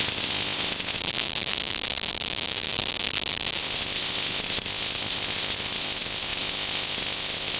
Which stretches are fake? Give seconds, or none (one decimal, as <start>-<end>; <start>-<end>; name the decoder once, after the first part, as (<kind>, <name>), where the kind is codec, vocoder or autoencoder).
0.0-1.0 (codec, ZipCodec); 3.6-7.6